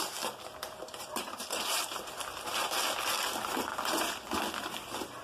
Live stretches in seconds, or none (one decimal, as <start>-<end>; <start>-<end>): 0.0-0.6; 2.1-3.7; 4.4-5.2

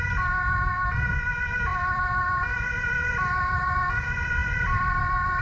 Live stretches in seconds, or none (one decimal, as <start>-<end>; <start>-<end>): 0.0-1.7; 3.7-4.4; 5.0-5.4

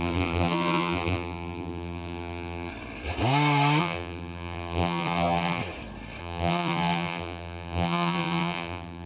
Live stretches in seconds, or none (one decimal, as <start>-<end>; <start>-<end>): 2.7-3.8; 5.6-6.2

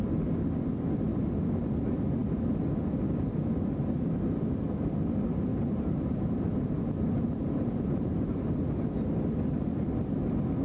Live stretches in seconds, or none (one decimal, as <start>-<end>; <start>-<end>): 0.0-5.5; 8.6-10.6

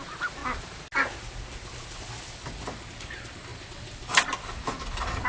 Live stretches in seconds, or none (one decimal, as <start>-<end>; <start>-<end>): 0.0-5.3